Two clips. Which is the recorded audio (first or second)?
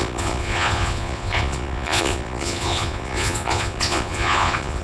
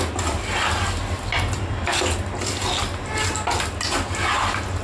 second